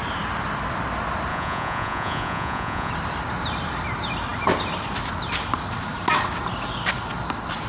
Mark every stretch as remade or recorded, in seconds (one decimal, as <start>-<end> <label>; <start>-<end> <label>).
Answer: 0.0-1.3 recorded; 1.3-2.9 remade; 2.9-7.7 recorded